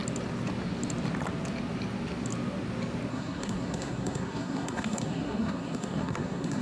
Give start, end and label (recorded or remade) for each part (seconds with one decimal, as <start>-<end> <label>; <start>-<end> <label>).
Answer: 0.0-3.1 recorded; 3.1-6.6 remade